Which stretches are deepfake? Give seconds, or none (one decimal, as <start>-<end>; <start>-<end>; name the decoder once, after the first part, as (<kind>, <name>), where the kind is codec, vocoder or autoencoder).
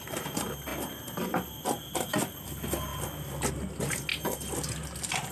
none